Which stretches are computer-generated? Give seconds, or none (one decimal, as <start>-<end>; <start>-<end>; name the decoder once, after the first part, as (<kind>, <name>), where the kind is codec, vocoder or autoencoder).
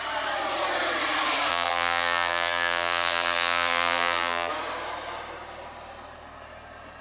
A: 1.5-4.5 (vocoder, BigVGAN v2)